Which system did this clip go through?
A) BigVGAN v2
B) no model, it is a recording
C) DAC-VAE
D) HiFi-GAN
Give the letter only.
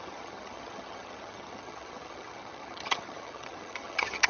D